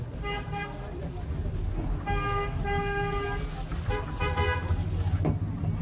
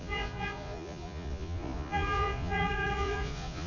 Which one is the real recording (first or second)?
first